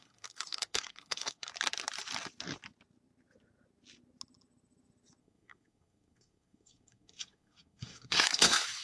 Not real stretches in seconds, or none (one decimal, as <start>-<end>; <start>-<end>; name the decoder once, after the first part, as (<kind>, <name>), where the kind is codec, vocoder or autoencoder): 0.0-1.5 (codec, SNAC); 5.2-8.8